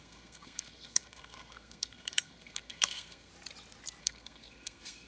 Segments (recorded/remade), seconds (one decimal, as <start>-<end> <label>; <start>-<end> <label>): 0.0-3.3 remade; 3.3-4.0 recorded; 4.0-5.1 remade